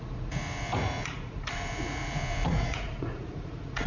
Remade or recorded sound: remade